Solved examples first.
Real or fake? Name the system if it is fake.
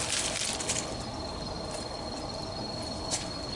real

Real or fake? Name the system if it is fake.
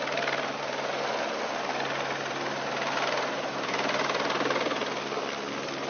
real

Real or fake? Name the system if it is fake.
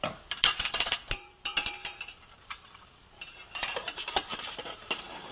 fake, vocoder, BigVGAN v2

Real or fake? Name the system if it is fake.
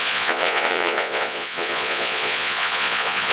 fake, vocoder, Vocos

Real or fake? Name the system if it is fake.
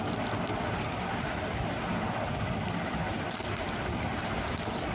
real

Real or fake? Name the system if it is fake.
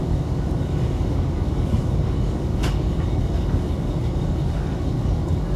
fake, codec, DAC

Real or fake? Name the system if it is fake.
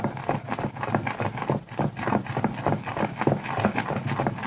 real